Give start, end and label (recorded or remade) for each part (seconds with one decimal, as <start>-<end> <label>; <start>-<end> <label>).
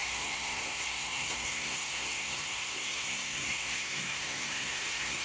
0.0-5.2 remade